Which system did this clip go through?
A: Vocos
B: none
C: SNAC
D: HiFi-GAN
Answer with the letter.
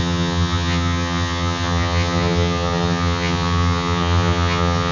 D